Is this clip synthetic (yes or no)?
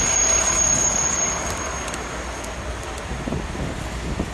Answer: no